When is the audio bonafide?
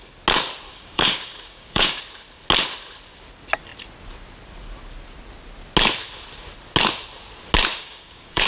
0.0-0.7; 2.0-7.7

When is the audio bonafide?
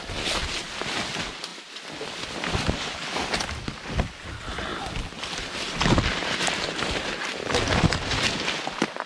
0.0-9.1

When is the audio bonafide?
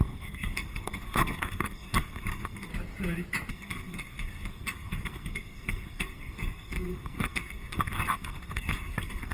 2.7-3.5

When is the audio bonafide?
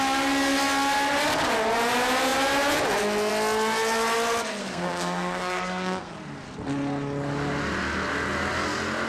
0.0-4.6; 6.1-9.1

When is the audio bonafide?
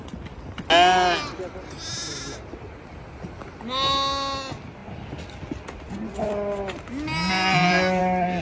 0.0-8.4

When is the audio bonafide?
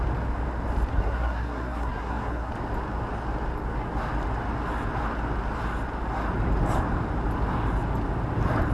0.0-0.9; 2.5-8.7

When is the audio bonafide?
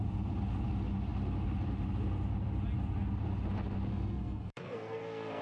0.0-3.9